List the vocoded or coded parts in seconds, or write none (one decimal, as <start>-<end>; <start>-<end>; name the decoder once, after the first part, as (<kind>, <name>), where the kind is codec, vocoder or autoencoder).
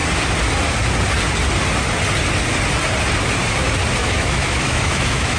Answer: 4.0-5.4 (autoencoder, DAC-VAE)